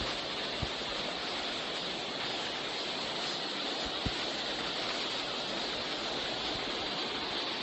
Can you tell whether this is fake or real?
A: real